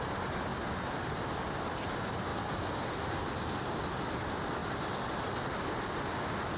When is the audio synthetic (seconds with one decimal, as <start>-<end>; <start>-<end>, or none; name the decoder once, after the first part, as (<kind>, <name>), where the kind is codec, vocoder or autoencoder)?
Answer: 4.6-5.6 (vocoder, BigVGAN v2)